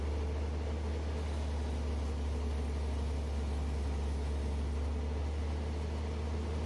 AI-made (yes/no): no